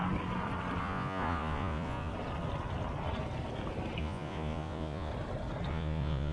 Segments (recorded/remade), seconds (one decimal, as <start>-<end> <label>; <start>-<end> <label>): 0.0-0.8 recorded; 0.8-2.1 remade; 2.1-4.0 recorded; 4.0-5.1 remade; 5.1-5.7 recorded; 5.7-6.3 remade